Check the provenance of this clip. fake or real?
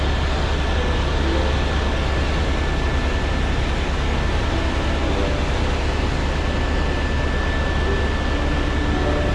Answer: real